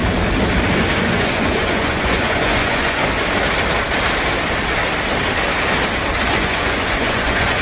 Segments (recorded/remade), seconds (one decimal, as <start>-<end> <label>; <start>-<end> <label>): 0.0-1.0 recorded; 1.0-3.0 remade; 3.0-6.2 recorded; 6.2-7.6 remade